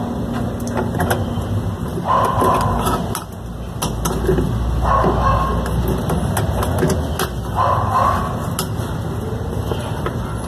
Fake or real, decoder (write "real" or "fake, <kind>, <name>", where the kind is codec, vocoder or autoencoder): real